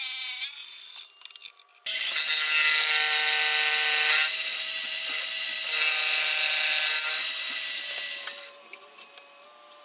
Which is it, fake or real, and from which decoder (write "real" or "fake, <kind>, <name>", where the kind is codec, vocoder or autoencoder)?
real